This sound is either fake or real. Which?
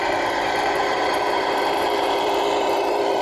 fake